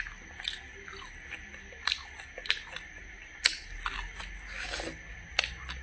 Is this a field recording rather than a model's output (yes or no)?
yes